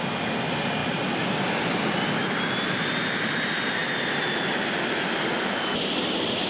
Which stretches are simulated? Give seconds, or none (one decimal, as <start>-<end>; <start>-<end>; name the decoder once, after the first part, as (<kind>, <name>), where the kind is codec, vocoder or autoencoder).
none